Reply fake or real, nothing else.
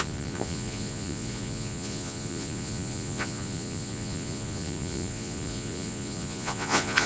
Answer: fake